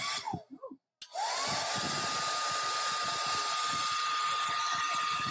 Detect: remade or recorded recorded